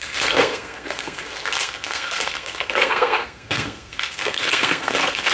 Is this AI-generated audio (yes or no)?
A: yes